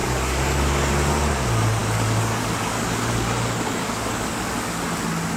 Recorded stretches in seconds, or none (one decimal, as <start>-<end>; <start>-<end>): 0.9-1.8; 4.5-5.4